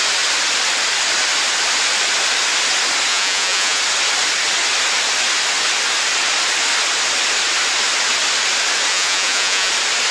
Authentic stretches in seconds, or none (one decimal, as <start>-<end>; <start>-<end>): 0.0-3.1; 3.8-8.9; 9.7-10.1